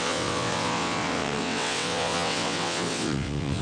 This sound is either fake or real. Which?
fake